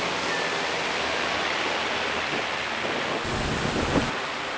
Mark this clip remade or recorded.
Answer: recorded